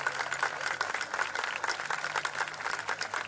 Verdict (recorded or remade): recorded